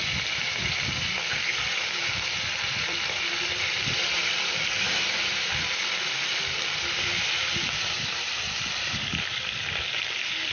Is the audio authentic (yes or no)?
no